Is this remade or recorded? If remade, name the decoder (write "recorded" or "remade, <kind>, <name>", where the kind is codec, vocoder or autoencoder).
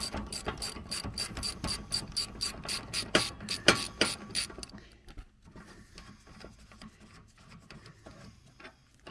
recorded